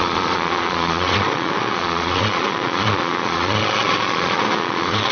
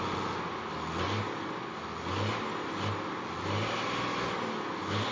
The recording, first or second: second